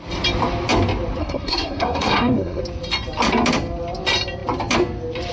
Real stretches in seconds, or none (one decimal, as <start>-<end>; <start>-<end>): 0.0-1.2; 2.6-5.3